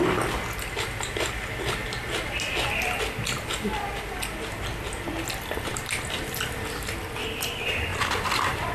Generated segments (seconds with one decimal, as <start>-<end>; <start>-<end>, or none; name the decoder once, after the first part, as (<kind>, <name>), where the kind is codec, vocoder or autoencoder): none